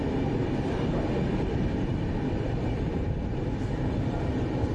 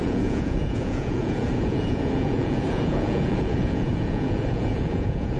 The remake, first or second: second